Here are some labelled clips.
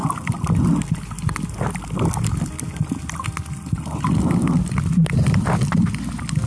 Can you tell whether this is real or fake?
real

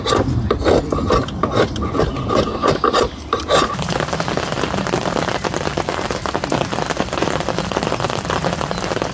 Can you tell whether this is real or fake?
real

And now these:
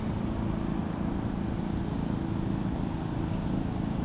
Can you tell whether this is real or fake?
real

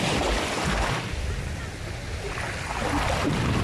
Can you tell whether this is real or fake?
real